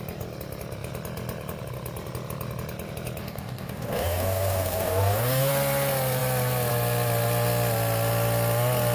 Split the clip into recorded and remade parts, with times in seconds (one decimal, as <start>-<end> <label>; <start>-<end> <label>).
0.0-3.2 recorded; 3.2-5.5 remade; 5.5-8.9 recorded